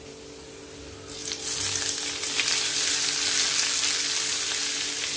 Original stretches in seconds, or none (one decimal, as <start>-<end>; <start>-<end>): 0.0-5.2